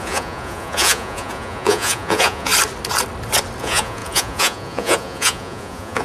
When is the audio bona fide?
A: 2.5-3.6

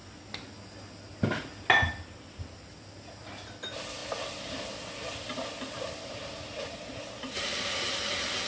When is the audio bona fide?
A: 0.0-8.5

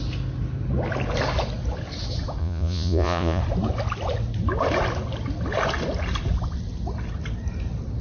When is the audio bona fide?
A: 0.0-2.4; 3.4-8.0

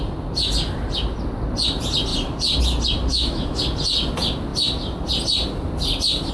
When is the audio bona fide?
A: 0.0-3.1; 3.6-6.3

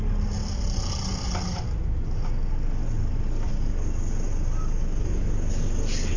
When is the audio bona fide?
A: 0.0-6.2